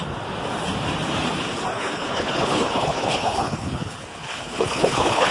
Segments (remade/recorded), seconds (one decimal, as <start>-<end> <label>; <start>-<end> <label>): 0.0-1.7 recorded; 1.7-5.3 remade